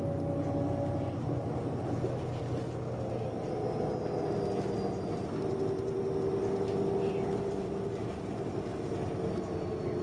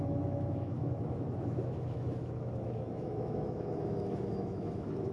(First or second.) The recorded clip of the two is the first